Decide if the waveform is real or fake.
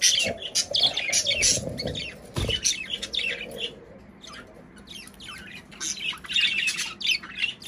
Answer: real